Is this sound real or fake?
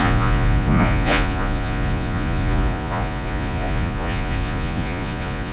fake